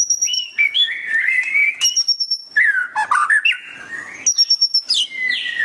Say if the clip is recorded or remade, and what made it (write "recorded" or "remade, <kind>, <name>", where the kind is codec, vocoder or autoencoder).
recorded